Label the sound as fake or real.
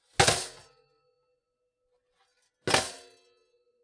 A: real